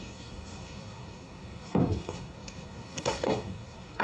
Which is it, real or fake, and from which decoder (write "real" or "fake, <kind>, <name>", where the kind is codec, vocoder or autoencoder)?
fake, codec, SNAC